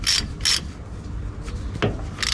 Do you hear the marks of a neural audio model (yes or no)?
no